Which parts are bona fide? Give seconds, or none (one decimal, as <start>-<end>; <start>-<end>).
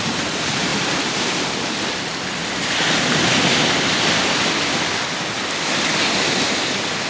2.4-6.0